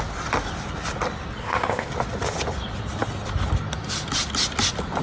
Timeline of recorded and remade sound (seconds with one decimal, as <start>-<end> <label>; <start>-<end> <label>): 0.0-1.4 recorded; 1.4-1.9 remade; 1.9-5.0 recorded